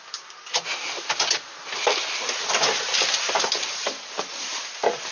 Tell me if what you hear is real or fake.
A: real